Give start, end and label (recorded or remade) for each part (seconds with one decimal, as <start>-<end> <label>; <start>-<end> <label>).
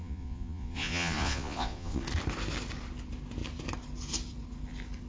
0.0-2.0 remade; 2.0-5.1 recorded